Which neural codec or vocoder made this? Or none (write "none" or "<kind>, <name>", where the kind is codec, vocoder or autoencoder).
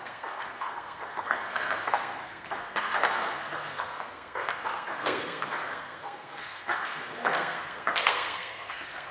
codec, SNAC